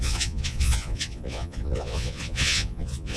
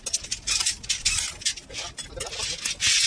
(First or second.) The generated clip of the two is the first